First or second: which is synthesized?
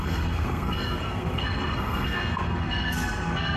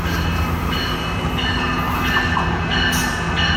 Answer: first